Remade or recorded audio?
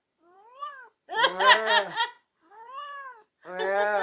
remade